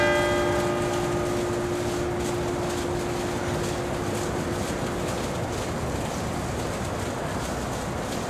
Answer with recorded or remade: recorded